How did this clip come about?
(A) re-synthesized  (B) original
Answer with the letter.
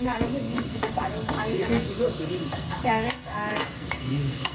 A